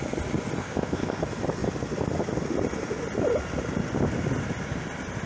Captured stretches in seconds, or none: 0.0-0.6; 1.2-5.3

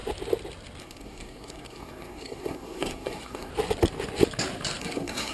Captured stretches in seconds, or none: 0.0-0.8; 3.5-4.8

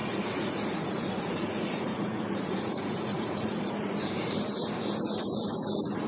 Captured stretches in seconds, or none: 3.7-6.1